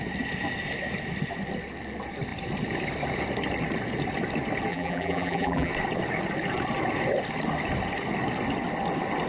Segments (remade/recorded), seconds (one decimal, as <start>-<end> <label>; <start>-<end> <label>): 0.0-4.7 recorded; 4.7-5.7 remade; 5.7-9.3 recorded